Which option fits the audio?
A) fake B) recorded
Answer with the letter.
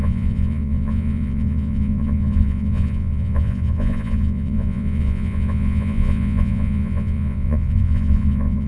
A